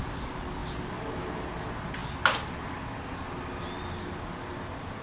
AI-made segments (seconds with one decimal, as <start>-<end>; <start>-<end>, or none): none